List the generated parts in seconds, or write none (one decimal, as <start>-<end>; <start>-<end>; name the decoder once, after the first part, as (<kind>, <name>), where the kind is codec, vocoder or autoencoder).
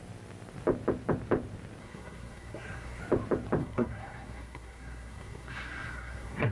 1.8-3.0 (codec, SNAC); 3.6-6.5